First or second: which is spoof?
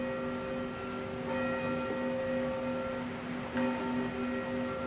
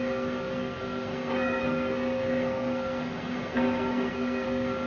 second